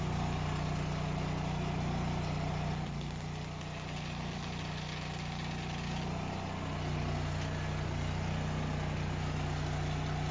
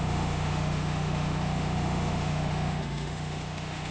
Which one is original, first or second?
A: first